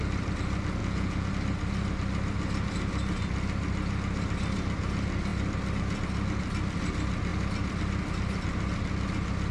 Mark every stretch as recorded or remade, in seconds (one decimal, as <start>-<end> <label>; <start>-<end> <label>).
0.0-0.8 recorded; 0.8-1.3 remade; 1.3-9.5 recorded